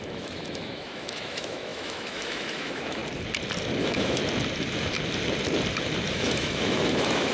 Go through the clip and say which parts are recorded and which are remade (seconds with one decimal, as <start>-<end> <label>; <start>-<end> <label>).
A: 0.0-3.0 remade; 3.0-3.8 recorded; 3.8-4.2 remade; 4.2-6.1 recorded; 6.1-7.3 remade